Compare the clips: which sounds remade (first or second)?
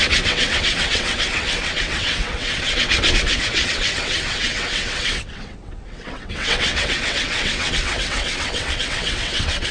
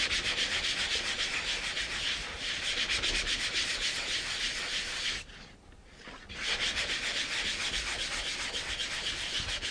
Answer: first